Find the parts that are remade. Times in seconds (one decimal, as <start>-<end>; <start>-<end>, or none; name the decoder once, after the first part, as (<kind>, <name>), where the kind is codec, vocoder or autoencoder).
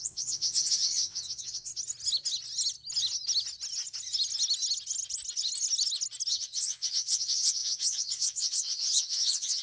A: 0.0-1.7 (vocoder, WaveNeXt); 6.3-9.6